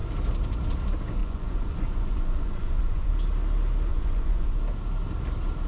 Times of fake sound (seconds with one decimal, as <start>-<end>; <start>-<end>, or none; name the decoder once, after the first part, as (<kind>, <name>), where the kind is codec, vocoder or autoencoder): 1.2-3.1 (vocoder, Vocos); 3.9-4.6